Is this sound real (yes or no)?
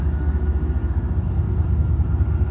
yes